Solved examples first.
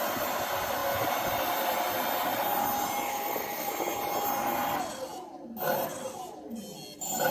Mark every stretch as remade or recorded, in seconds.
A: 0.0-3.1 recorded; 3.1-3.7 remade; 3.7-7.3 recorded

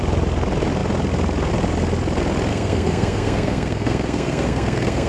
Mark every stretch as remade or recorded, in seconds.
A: 0.0-2.5 recorded; 2.5-5.1 remade

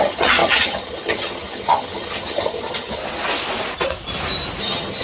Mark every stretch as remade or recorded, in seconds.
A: 0.0-3.0 remade; 3.0-4.6 recorded; 4.6-5.0 remade

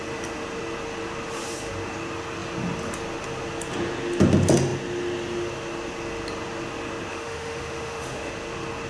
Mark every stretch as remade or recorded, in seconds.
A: 0.0-7.1 recorded; 7.1-8.3 remade; 8.3-8.9 recorded

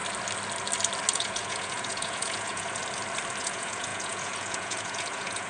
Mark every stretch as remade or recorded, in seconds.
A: 0.0-1.1 recorded; 1.1-2.8 remade; 2.8-3.4 recorded; 3.4-5.5 remade

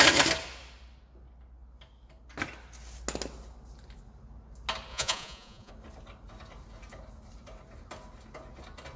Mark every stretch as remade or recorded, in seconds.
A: 0.0-4.9 recorded; 4.9-5.7 remade; 5.7-9.0 recorded